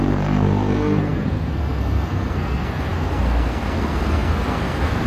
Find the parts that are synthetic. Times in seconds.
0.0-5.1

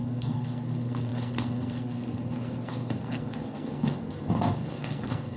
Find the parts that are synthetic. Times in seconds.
0.0-5.4

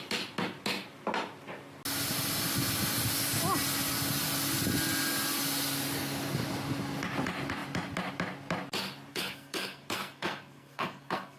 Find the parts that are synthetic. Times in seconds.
9.1-11.4

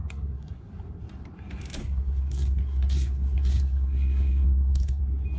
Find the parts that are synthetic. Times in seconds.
0.0-0.7; 1.8-5.0

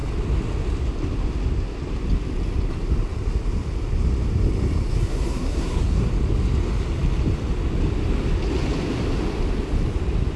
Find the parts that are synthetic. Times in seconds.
5.0-6.1

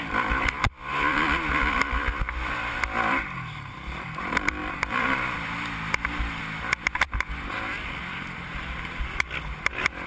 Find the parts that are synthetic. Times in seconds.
none

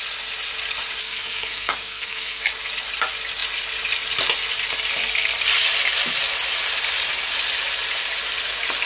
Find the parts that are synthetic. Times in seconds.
1.0-2.4